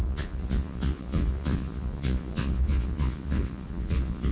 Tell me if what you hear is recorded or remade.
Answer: remade